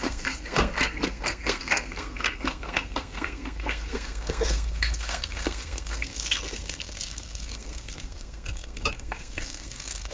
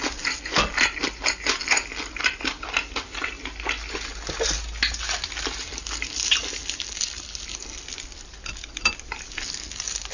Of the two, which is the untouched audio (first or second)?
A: second